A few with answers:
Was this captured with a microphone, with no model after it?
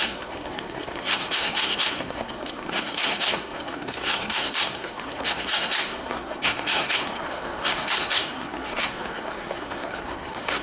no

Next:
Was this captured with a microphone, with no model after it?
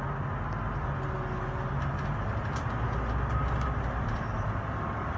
yes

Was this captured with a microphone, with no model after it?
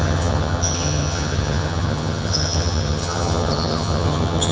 no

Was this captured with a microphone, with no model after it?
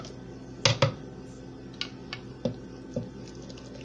yes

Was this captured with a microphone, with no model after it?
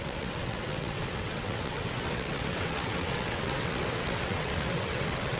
no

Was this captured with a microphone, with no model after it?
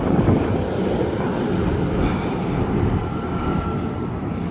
no